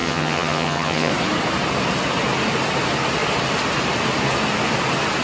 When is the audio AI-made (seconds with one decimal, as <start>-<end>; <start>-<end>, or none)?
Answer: 0.0-1.1

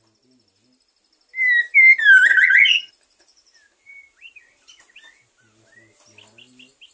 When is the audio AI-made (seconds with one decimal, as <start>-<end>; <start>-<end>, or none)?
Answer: 2.3-2.9